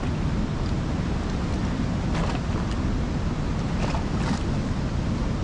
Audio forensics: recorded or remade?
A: recorded